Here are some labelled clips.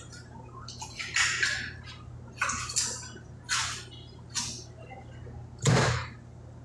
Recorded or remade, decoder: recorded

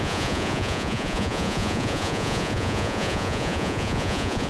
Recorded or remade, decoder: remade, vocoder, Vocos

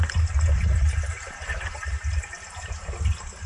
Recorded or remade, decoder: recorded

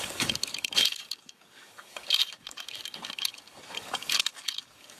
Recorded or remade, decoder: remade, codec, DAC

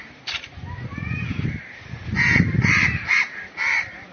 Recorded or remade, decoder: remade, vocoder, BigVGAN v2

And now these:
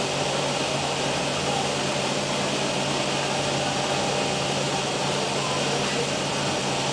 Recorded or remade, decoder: recorded